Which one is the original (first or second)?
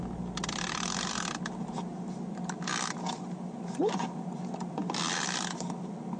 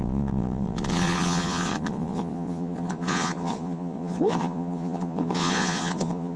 first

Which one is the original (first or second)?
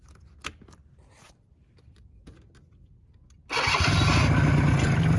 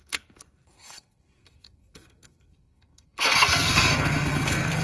first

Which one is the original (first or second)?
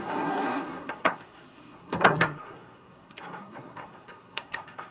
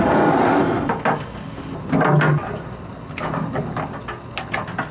second